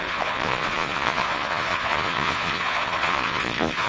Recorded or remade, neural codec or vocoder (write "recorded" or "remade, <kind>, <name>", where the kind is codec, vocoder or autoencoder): remade, vocoder, Vocos